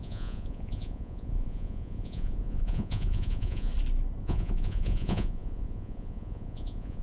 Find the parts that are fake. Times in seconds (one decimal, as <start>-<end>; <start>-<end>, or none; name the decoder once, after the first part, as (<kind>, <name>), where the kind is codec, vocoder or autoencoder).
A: 0.0-3.7 (vocoder, Vocos); 4.2-7.0